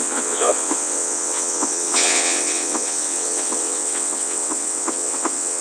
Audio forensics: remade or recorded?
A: remade